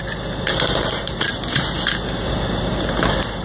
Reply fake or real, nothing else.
real